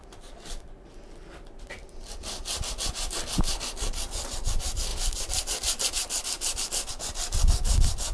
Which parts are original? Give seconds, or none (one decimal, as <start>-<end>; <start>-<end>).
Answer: 0.0-8.1